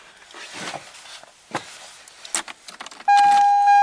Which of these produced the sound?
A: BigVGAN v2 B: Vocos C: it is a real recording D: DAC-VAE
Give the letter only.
C